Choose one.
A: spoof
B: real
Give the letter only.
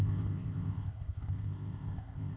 A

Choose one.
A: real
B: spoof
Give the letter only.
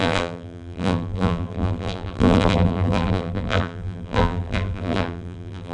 B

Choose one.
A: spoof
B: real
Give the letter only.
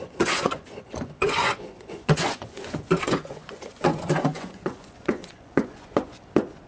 A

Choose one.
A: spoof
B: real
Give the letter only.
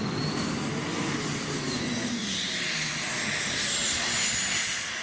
B